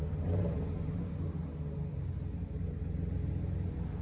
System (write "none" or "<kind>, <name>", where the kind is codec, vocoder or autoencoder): none